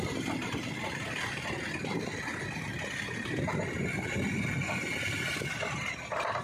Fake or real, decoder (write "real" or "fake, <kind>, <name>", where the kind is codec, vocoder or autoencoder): real